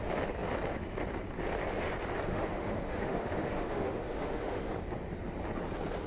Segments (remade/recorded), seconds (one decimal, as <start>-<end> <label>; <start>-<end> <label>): 0.0-2.3 recorded; 2.3-4.7 remade; 4.7-6.1 recorded